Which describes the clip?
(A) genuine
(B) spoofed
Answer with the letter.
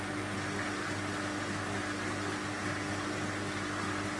A